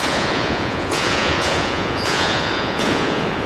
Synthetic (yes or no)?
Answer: yes